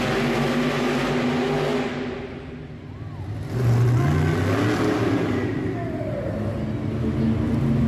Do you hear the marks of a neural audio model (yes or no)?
no